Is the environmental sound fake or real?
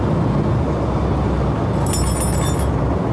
real